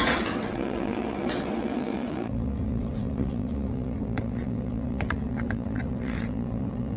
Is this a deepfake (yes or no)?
yes